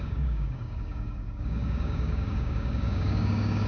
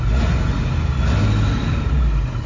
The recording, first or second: second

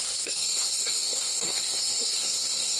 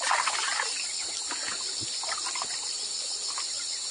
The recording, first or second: second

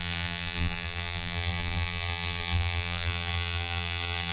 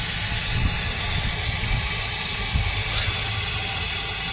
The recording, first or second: second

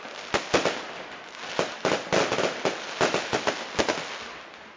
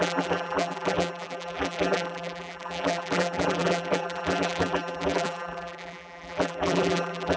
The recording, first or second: first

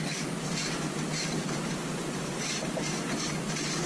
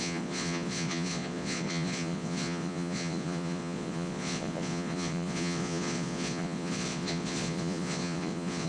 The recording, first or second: first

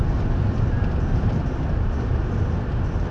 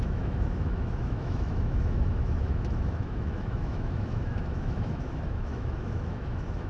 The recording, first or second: first